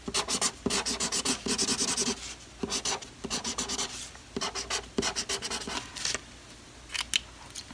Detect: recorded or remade recorded